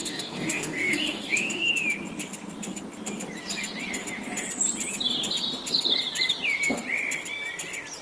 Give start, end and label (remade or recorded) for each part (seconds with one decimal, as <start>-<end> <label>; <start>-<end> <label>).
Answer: 0.0-1.7 remade; 1.7-8.0 recorded